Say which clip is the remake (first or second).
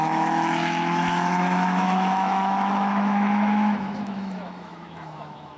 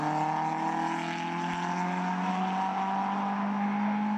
first